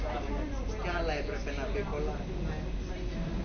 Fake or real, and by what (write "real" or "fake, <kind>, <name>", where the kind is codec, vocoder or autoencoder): real